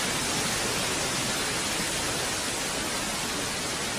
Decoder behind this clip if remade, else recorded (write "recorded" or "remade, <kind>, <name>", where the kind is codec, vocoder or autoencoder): recorded